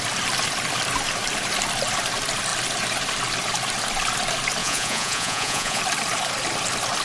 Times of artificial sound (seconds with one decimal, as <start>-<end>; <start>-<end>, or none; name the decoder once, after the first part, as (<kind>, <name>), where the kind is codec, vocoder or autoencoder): 4.6-5.8 (vocoder, Vocos)